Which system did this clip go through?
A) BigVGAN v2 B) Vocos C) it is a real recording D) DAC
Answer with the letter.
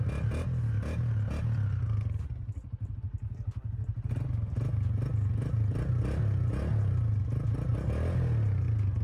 C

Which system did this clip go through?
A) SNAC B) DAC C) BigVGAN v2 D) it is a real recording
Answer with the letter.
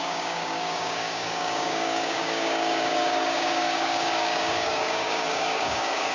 B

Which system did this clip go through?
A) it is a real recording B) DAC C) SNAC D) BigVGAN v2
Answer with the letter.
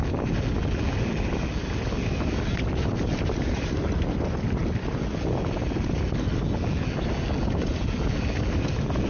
A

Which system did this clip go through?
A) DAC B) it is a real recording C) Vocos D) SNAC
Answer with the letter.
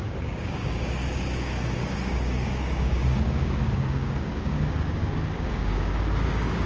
A